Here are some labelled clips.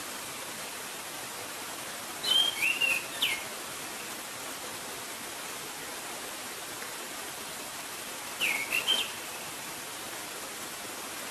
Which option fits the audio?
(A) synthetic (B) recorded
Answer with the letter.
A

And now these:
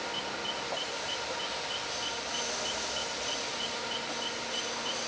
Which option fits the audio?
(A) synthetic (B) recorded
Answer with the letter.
B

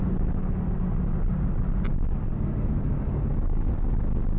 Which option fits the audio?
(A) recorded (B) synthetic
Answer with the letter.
A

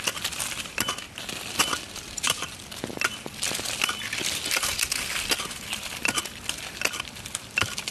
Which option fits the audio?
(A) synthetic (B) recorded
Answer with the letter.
B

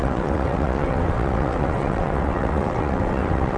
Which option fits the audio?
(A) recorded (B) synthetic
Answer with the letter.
B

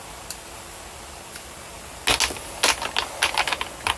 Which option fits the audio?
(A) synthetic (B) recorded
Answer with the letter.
B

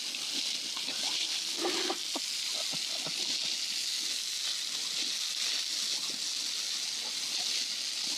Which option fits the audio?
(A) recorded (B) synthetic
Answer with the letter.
A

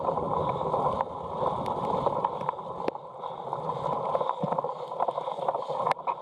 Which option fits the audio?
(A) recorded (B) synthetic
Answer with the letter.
A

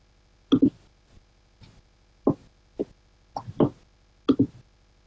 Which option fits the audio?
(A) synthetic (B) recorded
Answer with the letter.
B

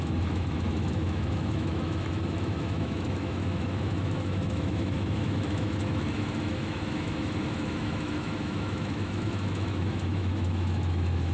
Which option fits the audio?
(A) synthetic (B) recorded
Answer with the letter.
A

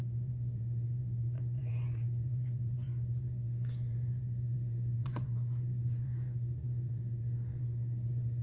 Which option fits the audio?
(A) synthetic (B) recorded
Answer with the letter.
A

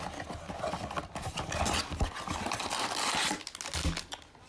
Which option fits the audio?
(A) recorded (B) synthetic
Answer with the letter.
A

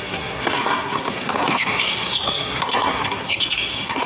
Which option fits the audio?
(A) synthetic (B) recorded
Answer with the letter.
A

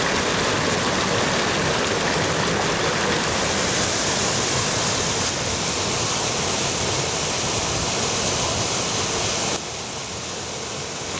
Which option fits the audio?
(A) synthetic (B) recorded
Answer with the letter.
B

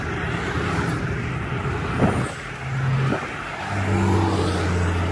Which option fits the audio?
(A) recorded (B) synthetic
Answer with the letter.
A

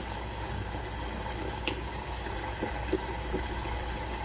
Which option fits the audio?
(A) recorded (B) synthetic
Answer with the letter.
A